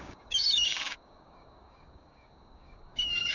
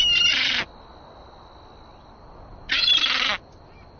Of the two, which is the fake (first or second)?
first